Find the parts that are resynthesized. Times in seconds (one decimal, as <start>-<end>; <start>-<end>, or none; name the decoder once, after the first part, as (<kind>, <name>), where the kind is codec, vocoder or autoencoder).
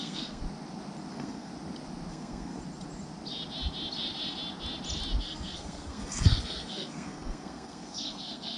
0.0-0.4 (codec, SNAC); 1.1-1.5; 2.1-2.6; 5.2-8.6